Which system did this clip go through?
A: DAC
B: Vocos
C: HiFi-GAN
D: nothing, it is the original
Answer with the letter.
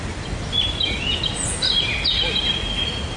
D